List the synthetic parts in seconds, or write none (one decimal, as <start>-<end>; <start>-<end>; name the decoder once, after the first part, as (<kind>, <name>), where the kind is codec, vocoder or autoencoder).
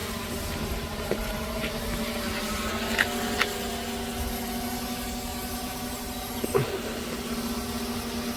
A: 0.0-2.6 (vocoder, BigVGAN v2); 5.3-7.0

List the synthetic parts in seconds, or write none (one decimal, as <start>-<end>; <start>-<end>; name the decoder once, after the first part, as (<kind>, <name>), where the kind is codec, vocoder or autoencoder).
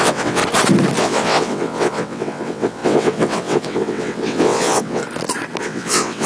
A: 0.0-0.4 (vocoder, WaveNeXt); 1.0-5.0; 5.6-6.3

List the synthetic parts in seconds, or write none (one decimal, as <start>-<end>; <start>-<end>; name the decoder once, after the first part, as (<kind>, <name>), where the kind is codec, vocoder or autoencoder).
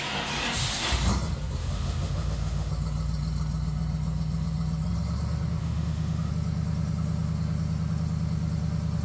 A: 1.6-2.7 (autoencoder, DAC-VAE); 5.6-6.3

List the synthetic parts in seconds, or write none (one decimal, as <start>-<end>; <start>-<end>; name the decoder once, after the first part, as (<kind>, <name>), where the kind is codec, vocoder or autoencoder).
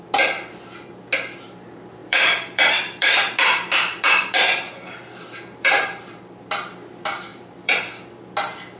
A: 2.0-6.2 (vocoder, BigVGAN v2); 7.3-7.8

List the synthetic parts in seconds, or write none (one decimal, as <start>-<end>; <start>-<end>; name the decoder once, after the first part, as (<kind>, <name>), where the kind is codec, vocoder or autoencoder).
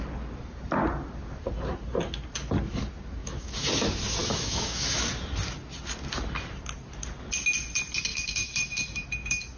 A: 3.2-3.7 (autoencoder, DAC-VAE); 4.2-5.1; 8.1-9.6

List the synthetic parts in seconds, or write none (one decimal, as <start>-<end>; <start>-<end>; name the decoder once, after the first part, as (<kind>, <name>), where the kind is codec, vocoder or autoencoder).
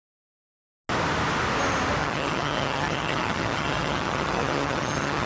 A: 2.0-5.3 (vocoder, HiFi-GAN)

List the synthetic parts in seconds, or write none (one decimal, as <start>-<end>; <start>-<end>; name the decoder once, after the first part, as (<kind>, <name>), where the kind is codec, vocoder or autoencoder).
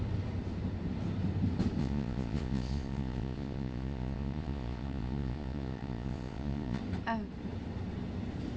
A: 1.8-6.8 (vocoder, Vocos)